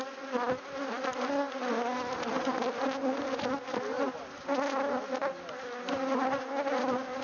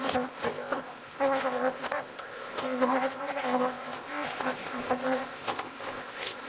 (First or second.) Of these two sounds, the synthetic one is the second